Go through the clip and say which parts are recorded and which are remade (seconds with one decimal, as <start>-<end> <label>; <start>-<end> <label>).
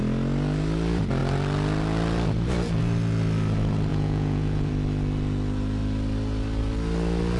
0.0-3.9 recorded; 3.9-4.7 remade; 4.7-7.4 recorded